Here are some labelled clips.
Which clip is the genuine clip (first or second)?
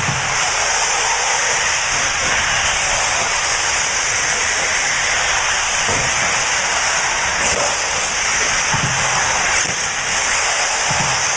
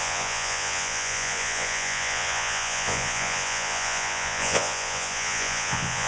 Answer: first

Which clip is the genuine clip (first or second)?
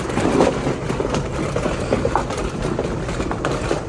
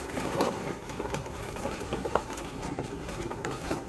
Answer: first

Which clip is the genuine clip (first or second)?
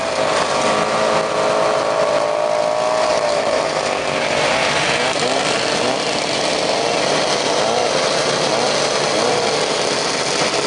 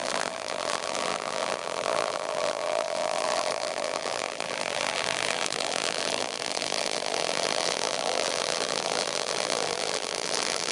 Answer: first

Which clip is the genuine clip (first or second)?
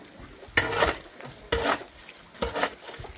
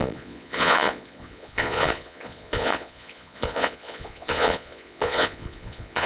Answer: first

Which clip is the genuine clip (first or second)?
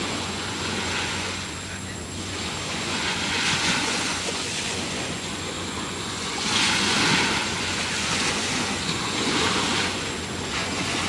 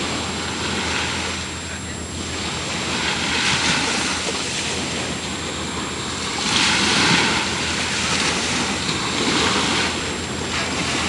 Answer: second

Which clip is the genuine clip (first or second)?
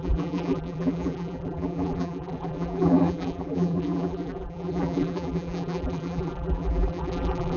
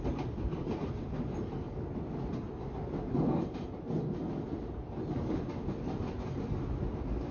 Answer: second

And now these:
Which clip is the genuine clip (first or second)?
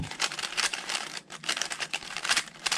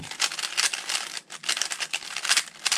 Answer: second